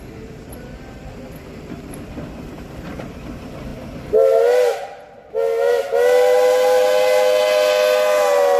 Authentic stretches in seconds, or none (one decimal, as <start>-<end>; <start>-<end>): 3.7-8.6